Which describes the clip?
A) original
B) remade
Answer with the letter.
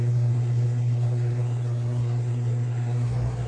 B